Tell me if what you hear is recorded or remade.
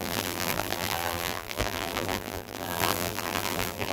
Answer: remade